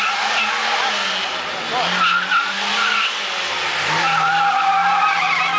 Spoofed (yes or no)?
no